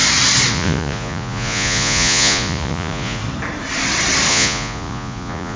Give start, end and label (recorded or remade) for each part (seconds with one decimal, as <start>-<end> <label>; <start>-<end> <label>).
0.0-0.5 recorded; 0.5-3.2 remade; 3.2-4.3 recorded; 4.3-5.6 remade